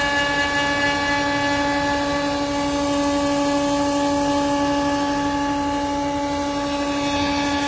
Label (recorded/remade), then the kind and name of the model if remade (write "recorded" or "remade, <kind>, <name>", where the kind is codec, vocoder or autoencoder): recorded